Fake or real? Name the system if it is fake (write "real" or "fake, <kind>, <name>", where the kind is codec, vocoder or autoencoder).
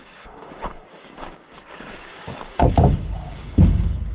fake, codec, DAC